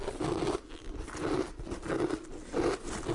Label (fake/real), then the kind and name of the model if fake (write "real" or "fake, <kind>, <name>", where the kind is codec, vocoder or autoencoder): real